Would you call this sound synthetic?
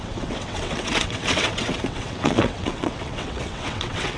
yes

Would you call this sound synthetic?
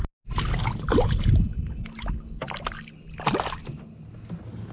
no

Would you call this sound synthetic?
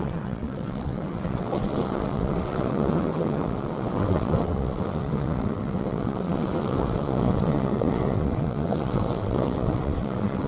yes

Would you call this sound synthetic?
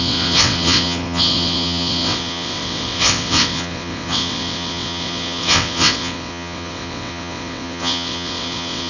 yes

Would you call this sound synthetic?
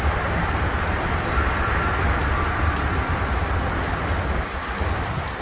no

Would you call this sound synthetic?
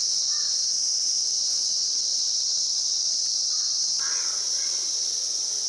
yes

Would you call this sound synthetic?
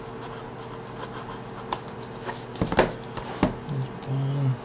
no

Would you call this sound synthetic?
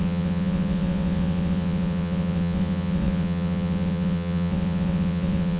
yes